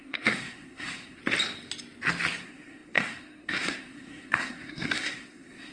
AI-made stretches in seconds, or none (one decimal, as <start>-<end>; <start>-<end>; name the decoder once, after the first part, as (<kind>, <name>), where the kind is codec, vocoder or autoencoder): 0.0-1.2 (codec, SNAC); 2.4-5.7